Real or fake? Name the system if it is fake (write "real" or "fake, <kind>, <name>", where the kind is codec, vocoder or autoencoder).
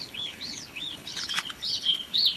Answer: fake, codec, HILCodec